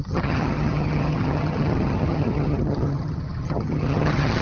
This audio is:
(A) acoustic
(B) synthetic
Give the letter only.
B